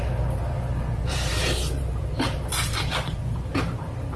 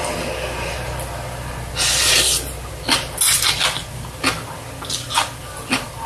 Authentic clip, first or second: second